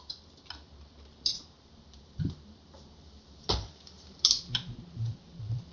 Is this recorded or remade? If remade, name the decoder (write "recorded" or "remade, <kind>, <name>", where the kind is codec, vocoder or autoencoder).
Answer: remade, vocoder, BigVGAN v2